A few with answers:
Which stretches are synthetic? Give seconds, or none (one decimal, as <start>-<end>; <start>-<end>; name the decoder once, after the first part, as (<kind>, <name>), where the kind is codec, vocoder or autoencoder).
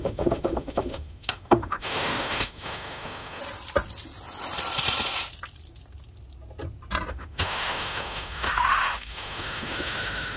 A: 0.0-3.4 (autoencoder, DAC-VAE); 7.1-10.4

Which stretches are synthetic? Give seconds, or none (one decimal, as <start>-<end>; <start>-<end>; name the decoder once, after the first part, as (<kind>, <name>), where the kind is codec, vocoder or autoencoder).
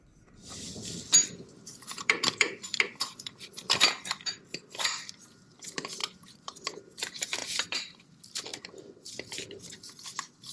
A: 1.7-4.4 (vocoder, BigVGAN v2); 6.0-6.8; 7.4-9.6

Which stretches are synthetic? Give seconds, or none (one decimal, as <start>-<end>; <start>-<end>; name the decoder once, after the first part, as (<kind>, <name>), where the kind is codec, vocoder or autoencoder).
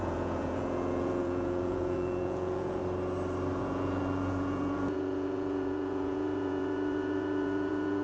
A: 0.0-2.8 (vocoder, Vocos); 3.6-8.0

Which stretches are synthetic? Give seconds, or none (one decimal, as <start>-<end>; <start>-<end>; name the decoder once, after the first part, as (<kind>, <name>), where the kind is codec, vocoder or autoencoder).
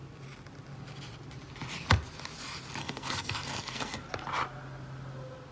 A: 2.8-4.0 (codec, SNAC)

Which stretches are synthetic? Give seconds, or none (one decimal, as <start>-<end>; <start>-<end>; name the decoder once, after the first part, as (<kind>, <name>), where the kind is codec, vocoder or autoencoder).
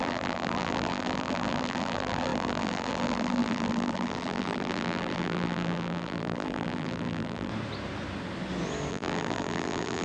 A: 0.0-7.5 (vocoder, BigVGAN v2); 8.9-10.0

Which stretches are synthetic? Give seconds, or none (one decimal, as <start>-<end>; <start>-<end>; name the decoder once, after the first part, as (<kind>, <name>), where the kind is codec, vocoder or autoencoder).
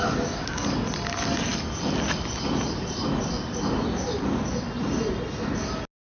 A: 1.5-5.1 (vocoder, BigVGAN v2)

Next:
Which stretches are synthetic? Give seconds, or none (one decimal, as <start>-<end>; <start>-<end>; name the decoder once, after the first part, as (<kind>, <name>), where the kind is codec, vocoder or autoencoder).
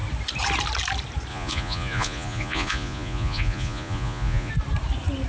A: 1.3-4.5 (vocoder, Vocos)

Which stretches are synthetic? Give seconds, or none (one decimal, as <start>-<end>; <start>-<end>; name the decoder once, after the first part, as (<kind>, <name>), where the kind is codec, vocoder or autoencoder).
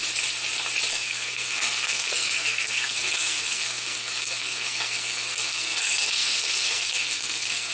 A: 0.9-7.7 (codec, SNAC)